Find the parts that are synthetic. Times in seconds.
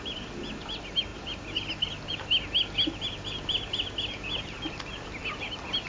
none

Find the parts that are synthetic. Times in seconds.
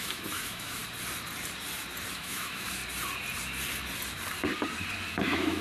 0.0-0.8 (autoencoder, DAC-VAE); 2.1-2.8; 5.1-5.6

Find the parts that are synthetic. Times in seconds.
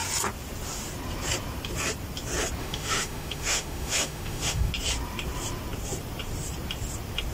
2.6-4.7 (autoencoder, DAC-VAE)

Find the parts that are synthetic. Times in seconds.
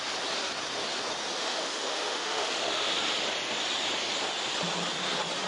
1.4-2.9 (autoencoder, DAC-VAE)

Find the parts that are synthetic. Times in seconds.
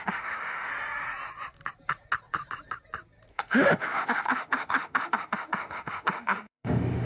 0.0-0.7 (autoencoder, DAC-VAE); 3.3-7.1